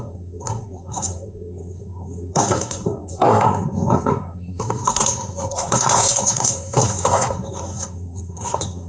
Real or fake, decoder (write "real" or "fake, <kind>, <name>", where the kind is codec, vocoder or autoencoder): fake, codec, SNAC